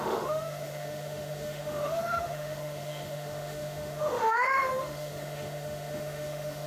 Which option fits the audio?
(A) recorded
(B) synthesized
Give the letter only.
B